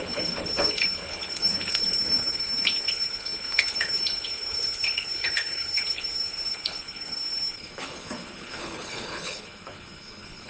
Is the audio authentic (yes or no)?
no